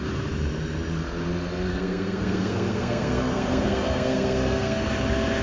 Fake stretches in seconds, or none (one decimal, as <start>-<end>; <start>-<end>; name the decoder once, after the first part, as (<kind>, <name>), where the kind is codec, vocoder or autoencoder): 1.7-4.9 (codec, SNAC)